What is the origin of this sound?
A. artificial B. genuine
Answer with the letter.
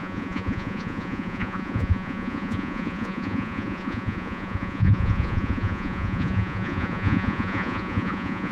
A